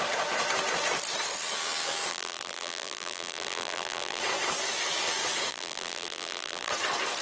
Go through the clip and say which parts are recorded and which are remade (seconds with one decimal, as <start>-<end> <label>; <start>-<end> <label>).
0.0-2.1 recorded; 2.1-4.2 remade; 4.2-5.5 recorded; 5.5-6.7 remade; 6.7-7.2 recorded